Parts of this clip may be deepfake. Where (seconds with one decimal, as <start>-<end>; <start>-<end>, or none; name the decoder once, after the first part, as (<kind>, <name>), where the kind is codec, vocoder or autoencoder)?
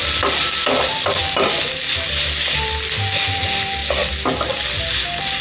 none